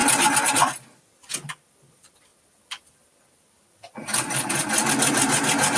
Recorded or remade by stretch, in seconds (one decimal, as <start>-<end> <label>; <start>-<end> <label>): 0.0-5.8 recorded